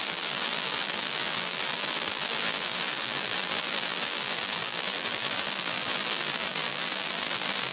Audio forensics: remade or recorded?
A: remade